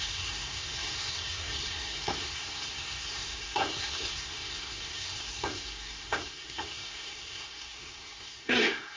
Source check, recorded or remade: remade